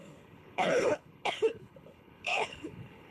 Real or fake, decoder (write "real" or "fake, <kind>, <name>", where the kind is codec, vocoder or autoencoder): fake, codec, HILCodec